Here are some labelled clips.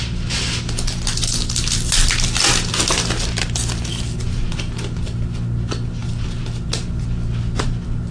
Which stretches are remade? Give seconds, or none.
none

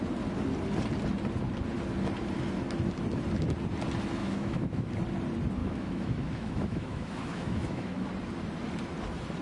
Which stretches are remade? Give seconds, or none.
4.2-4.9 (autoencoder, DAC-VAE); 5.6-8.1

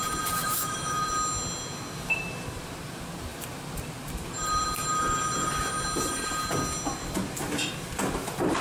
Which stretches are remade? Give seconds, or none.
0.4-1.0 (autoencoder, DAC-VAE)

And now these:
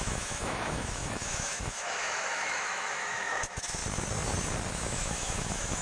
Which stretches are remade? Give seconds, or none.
0.0-3.8 (autoencoder, DAC-VAE); 4.7-5.8

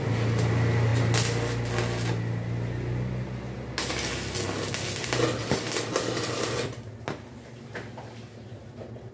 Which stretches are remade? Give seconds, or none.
none

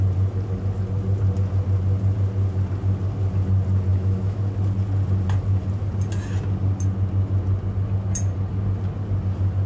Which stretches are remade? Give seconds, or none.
3.9-4.4 (autoencoder, DAC-VAE)

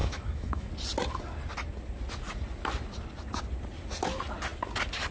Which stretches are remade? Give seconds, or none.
0.0-0.7 (autoencoder, DAC-VAE)